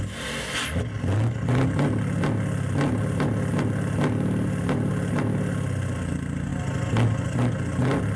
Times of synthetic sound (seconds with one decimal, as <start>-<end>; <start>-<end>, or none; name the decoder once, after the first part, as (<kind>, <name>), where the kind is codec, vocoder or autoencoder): none